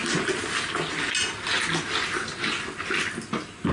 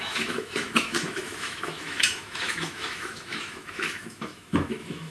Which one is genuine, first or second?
first